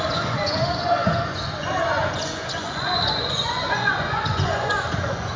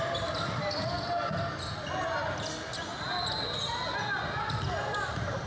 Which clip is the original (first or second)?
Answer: second